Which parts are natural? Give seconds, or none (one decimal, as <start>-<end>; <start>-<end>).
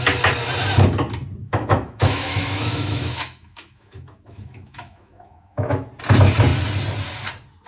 0.0-1.4; 5.9-7.7